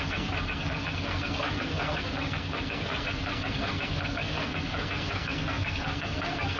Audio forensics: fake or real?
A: fake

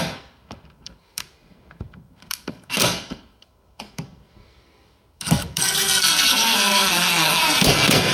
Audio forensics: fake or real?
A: fake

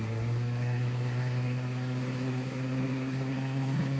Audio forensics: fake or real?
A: fake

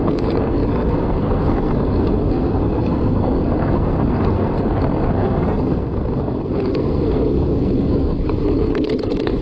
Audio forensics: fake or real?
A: fake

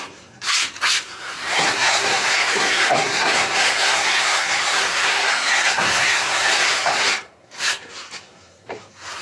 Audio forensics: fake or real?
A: fake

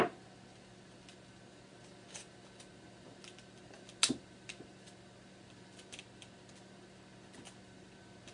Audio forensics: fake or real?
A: real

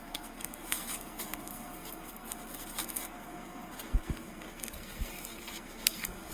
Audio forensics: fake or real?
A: fake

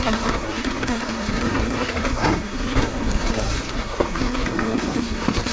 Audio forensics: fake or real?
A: fake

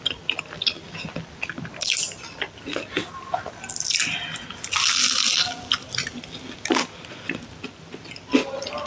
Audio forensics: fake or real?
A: real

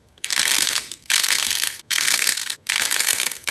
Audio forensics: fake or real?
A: fake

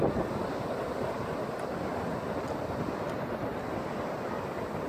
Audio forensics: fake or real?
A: real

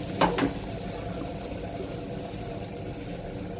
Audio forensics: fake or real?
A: real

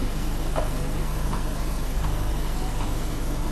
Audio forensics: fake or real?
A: fake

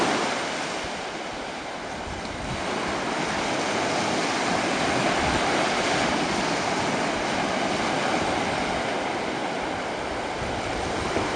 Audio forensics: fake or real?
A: real